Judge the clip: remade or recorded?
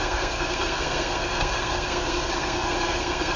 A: remade